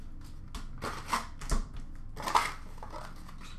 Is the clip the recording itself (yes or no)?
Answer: yes